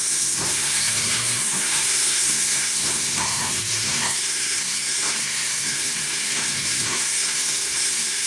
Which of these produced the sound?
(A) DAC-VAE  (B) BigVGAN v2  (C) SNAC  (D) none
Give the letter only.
C